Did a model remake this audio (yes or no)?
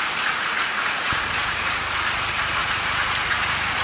yes